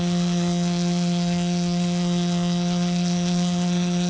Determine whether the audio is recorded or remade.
remade